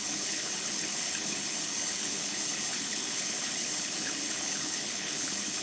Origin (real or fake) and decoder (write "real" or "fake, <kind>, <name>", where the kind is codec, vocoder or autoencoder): fake, codec, HILCodec